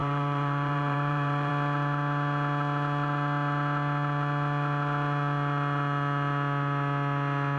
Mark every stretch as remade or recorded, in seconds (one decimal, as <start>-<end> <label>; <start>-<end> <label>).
0.0-1.5 remade; 1.5-7.6 recorded